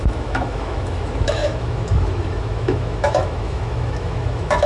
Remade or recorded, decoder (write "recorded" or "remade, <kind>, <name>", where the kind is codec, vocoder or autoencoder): remade, autoencoder, DAC-VAE